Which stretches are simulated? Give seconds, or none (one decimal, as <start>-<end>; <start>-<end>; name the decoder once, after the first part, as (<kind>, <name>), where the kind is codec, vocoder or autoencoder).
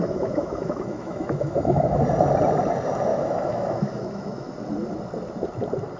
0.0-2.0 (autoencoder, DAC-VAE); 3.1-4.5